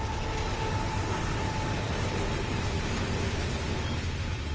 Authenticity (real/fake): real